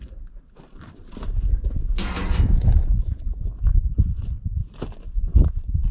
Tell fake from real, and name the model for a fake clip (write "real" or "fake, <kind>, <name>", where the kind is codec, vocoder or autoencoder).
fake, vocoder, BigVGAN v2